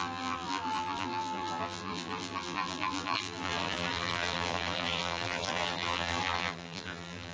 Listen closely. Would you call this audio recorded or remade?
remade